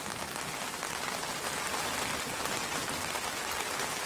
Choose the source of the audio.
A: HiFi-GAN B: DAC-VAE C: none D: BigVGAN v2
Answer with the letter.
C